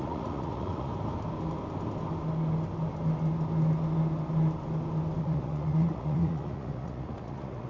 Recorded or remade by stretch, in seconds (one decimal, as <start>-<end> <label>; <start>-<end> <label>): 0.0-0.9 remade; 0.9-5.2 recorded; 5.2-7.7 remade